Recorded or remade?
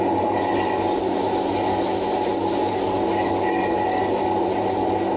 recorded